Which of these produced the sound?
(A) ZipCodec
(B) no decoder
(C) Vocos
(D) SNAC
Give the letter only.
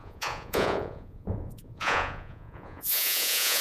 C